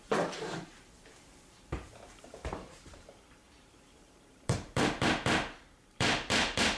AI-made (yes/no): yes